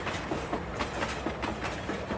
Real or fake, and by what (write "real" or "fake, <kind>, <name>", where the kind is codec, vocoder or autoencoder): real